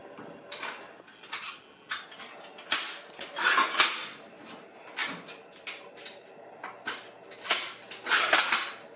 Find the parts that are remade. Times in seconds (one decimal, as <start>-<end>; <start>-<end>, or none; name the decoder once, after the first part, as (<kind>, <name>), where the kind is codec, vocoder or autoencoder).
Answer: none